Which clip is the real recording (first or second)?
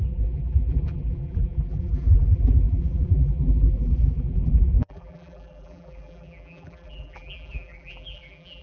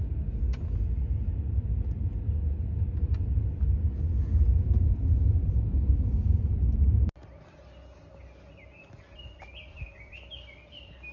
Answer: second